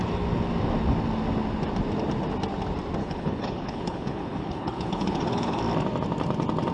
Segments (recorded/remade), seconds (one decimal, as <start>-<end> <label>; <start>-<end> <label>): 0.0-3.0 recorded; 3.0-5.6 remade; 5.6-6.7 recorded